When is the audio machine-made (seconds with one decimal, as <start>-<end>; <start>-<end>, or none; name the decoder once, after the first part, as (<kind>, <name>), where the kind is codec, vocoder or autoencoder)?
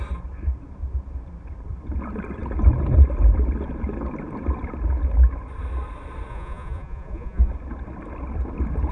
6.3-7.5 (vocoder, Vocos)